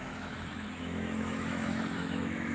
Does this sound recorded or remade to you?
remade